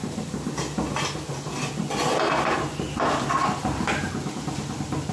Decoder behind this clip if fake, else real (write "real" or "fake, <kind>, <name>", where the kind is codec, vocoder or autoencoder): real